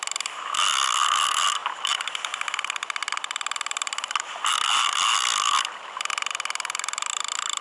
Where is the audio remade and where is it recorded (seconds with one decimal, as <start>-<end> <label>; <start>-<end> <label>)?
0.0-7.6 recorded